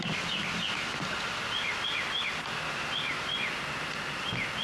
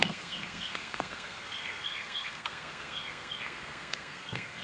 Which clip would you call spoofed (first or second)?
second